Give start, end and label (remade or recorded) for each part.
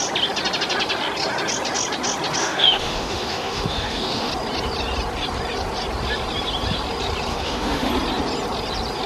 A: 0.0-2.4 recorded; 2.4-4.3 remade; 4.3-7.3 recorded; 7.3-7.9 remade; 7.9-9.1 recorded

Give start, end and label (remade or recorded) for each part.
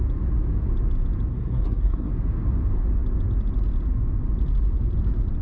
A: 0.0-1.3 recorded; 1.3-2.1 remade; 2.1-5.4 recorded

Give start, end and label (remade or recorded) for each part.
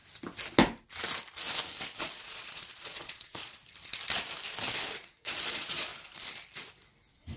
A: 0.0-2.0 recorded; 2.0-3.6 remade; 3.6-5.0 recorded; 5.0-5.9 remade; 5.9-7.4 recorded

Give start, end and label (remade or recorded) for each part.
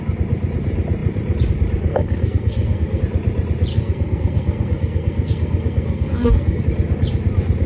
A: 0.0-1.9 recorded; 1.9-3.0 remade; 3.0-3.7 recorded; 3.7-6.6 remade; 6.6-7.7 recorded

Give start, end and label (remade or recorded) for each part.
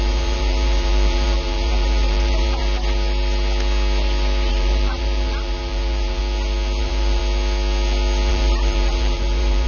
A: 0.0-2.6 remade; 2.6-4.5 recorded; 4.5-6.2 remade; 6.2-6.8 recorded; 6.8-7.2 remade; 7.2-8.3 recorded; 8.3-9.7 remade